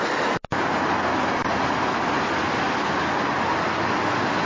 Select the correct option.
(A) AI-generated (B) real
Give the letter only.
B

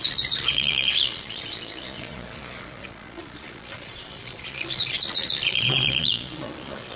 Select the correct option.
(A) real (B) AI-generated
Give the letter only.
B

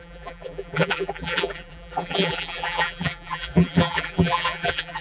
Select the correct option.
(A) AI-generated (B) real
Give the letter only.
A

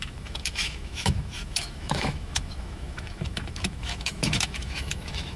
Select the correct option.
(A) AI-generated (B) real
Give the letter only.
A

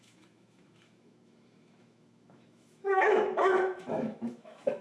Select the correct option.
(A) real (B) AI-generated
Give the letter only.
B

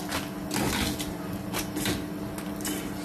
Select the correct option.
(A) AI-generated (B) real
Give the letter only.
B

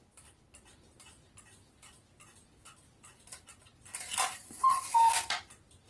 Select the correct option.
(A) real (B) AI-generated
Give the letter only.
A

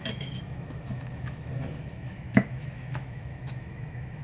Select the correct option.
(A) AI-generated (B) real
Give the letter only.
A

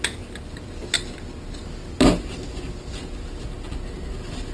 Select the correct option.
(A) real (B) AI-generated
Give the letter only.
A